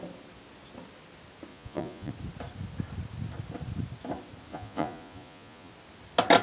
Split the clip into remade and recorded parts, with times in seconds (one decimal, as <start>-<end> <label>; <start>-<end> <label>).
0.0-1.5 recorded; 1.5-2.1 remade; 2.1-4.5 recorded; 4.5-5.7 remade; 5.7-6.4 recorded